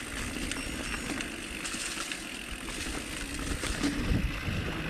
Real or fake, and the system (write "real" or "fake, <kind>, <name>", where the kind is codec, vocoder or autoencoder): real